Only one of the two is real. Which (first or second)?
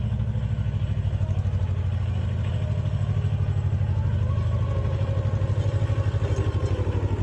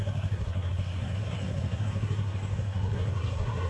first